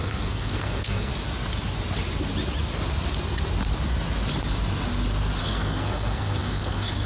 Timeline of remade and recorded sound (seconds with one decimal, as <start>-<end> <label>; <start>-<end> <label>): 0.0-1.1 remade; 1.1-5.4 recorded; 5.4-7.1 remade